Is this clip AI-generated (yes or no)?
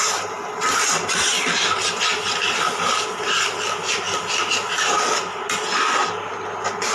no